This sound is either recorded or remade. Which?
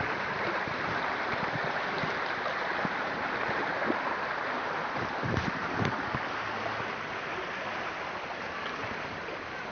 recorded